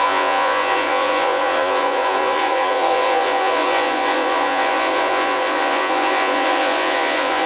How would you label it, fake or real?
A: fake